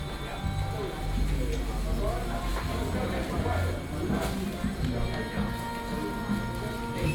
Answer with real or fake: real